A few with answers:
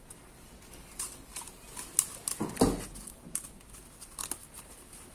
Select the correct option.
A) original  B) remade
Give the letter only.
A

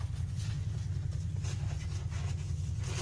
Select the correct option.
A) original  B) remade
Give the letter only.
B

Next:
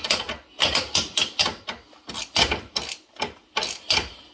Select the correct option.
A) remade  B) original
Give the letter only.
B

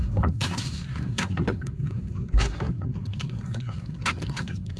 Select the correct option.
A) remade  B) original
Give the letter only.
A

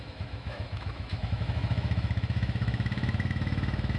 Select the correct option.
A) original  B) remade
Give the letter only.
B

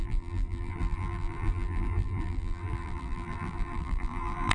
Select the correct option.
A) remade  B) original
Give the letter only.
A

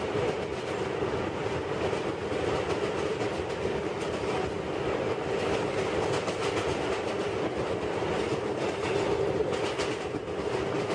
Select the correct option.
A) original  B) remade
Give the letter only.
A